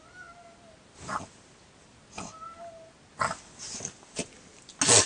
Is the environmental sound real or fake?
real